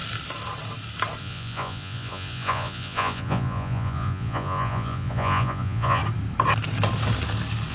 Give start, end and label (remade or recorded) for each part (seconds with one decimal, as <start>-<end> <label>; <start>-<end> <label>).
0.0-1.2 recorded; 1.2-6.0 remade; 6.0-7.7 recorded